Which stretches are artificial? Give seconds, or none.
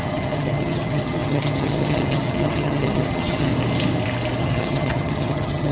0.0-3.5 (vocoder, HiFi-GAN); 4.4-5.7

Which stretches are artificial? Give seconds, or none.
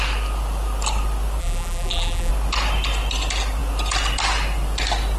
1.4-2.3 (vocoder, BigVGAN v2)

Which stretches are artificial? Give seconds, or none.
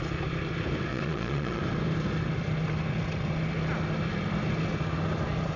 0.9-1.6 (vocoder, Vocos)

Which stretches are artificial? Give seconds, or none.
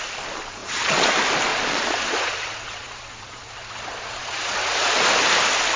0.6-1.1 (vocoder, Vocos); 1.5-5.0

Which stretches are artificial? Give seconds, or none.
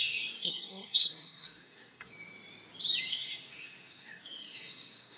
0.0-2.1 (codec, SNAC); 3.1-5.2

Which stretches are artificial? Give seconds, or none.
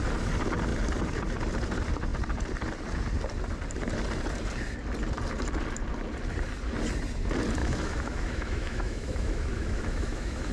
7.6-10.5 (autoencoder, DAC-VAE)